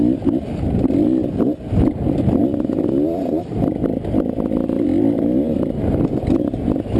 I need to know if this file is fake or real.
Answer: real